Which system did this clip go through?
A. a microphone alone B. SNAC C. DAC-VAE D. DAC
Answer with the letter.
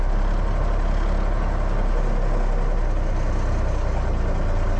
A